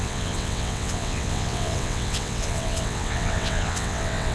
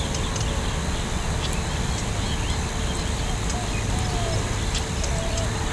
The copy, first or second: first